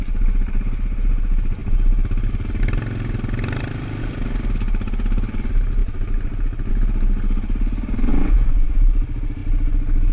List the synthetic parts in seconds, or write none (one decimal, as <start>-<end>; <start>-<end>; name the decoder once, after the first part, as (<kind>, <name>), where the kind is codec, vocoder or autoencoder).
8.1-8.7 (vocoder, Vocos)